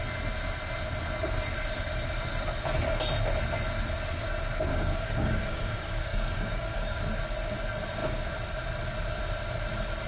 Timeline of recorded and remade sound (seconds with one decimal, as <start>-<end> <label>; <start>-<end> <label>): 0.0-4.7 recorded; 4.7-7.0 remade; 7.0-10.1 recorded